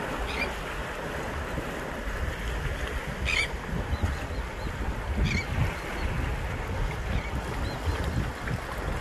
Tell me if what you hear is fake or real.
real